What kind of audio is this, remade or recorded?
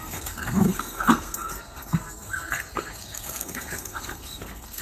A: remade